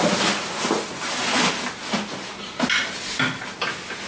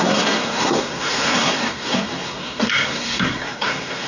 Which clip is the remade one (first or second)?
second